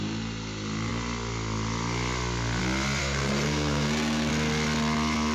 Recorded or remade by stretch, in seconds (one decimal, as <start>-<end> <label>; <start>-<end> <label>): 0.0-3.0 recorded; 3.0-4.3 remade; 4.3-5.3 recorded

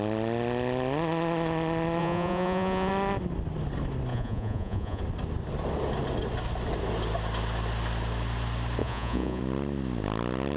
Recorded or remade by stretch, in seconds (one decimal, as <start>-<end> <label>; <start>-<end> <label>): 0.0-2.0 recorded; 2.0-2.9 remade; 2.9-4.1 recorded; 4.1-5.0 remade; 5.0-8.8 recorded; 8.8-9.4 remade; 9.4-10.6 recorded

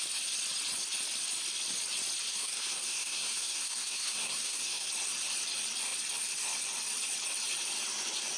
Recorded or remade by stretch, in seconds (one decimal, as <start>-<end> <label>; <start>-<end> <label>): 0.0-2.3 recorded; 2.3-4.9 remade; 4.9-8.4 recorded